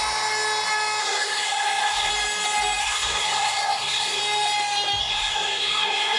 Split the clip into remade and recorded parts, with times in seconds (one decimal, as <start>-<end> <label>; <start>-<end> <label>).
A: 0.0-1.0 recorded; 1.0-2.1 remade; 2.1-2.8 recorded; 2.8-4.2 remade; 4.2-5.0 recorded; 5.0-6.2 remade